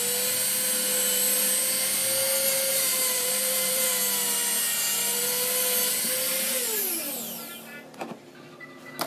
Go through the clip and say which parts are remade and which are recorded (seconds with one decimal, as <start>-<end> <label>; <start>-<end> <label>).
0.0-2.7 recorded; 2.7-3.9 remade; 3.9-9.1 recorded